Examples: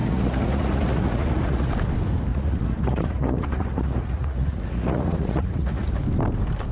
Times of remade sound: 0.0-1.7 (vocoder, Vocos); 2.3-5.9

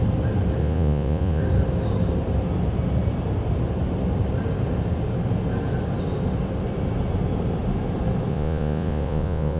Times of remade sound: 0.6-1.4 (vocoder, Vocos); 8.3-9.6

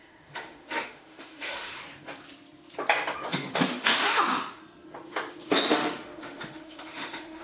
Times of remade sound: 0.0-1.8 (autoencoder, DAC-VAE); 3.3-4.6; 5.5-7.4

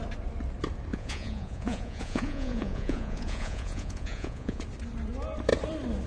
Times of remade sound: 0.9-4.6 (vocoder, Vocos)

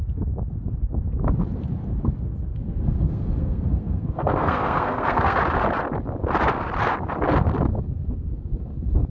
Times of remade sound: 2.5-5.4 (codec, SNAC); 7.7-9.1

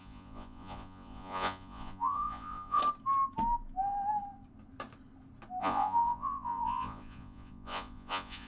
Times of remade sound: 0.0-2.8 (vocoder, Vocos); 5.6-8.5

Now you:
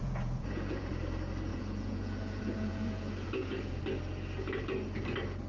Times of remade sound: 0.0-0.9 (vocoder, Vocos); 1.5-3.8

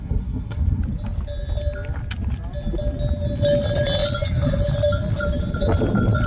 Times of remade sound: 0.0-0.8 (codec, SNAC)